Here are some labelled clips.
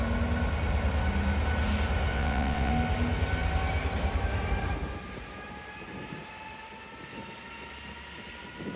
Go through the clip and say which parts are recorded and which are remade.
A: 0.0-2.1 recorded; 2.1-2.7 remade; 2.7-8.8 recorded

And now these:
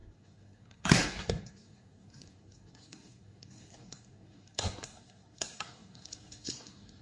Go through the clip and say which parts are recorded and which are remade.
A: 0.0-7.0 remade

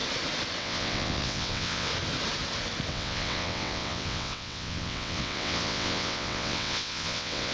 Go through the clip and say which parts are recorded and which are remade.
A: 0.0-0.6 recorded; 0.6-1.9 remade; 1.9-2.9 recorded; 2.9-7.5 remade